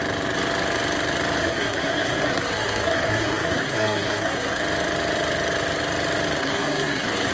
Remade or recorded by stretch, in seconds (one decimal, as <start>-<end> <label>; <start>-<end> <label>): 0.0-1.4 recorded; 1.4-4.6 remade; 4.6-6.4 recorded; 6.4-7.3 remade